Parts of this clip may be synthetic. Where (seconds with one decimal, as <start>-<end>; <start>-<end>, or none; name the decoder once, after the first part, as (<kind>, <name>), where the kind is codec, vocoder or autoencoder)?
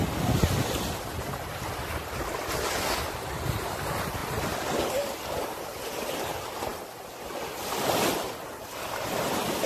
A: none